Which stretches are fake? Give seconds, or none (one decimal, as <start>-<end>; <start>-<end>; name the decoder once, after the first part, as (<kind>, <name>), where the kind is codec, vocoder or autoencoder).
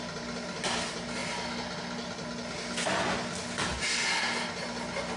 none